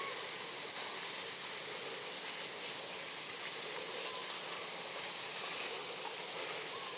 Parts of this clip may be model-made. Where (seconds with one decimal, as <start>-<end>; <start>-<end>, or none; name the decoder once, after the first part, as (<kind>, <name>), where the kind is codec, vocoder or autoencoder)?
5.3-6.2 (vocoder, BigVGAN v2)